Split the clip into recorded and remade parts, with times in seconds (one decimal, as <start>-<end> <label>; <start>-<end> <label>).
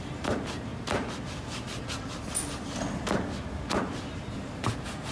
0.0-0.7 remade; 0.7-3.6 recorded; 3.6-5.1 remade